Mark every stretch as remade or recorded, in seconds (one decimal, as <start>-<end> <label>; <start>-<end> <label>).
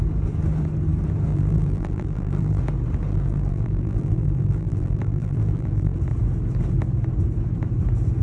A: 0.0-1.3 recorded; 1.3-2.6 remade; 2.6-3.1 recorded; 3.1-6.0 remade; 6.0-8.2 recorded